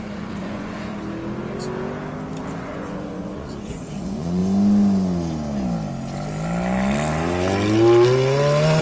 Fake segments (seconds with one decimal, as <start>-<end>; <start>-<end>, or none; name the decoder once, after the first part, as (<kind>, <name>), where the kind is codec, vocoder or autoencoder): 0.0-0.9 (vocoder, Vocos); 2.4-4.4